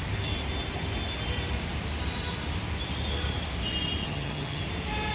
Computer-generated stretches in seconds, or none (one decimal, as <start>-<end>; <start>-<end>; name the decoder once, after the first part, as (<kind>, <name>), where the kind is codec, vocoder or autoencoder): 4.0-4.6 (vocoder, HiFi-GAN)